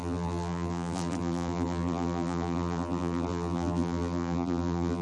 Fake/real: fake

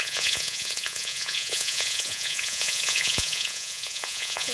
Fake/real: fake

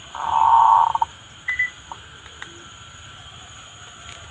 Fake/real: real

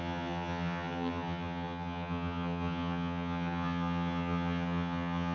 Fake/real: fake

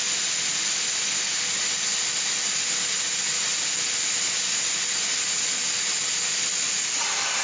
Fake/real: real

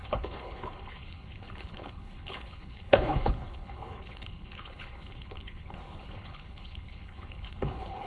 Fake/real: fake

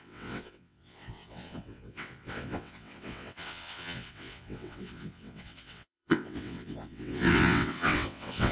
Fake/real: fake